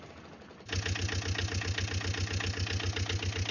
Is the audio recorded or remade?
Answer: recorded